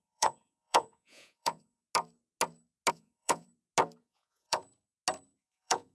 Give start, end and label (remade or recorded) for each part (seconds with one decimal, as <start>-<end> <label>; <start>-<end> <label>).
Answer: 0.0-1.8 remade; 1.8-2.9 recorded; 2.9-3.5 remade; 3.5-4.0 recorded; 4.0-4.6 remade; 4.6-5.4 recorded; 5.4-5.9 remade